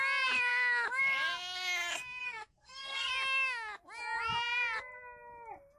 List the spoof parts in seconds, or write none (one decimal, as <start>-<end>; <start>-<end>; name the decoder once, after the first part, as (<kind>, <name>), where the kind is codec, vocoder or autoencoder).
2.2-3.1 (codec, SNAC)